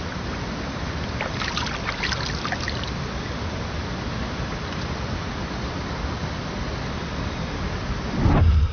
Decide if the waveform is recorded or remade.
recorded